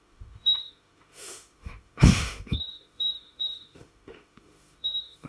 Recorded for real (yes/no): no